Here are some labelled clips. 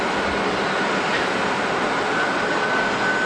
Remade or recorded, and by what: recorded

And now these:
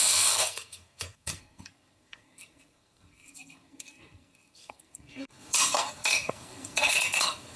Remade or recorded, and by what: remade, codec, SNAC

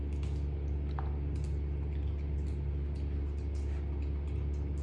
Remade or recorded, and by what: recorded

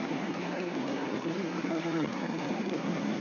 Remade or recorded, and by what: remade, codec, SNAC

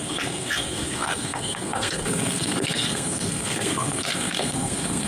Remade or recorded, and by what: remade, codec, SNAC